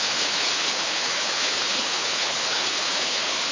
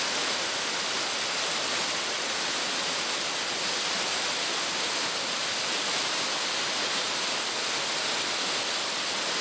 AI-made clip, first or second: first